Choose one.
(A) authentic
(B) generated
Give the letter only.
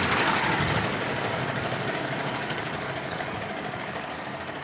B